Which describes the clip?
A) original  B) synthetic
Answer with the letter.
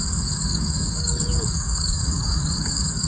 B